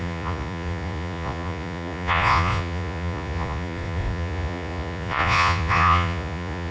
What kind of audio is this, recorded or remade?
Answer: remade